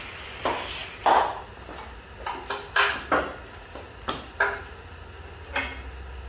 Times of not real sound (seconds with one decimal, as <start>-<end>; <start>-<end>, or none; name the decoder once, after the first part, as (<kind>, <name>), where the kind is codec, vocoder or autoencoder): none